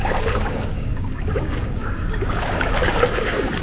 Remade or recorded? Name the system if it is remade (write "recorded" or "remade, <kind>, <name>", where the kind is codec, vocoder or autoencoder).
remade, codec, DAC